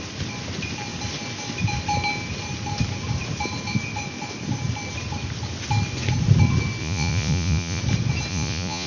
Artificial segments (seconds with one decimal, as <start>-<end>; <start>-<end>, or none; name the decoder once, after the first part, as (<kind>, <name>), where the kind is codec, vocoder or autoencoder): 6.8-7.8 (vocoder, Vocos); 8.3-8.9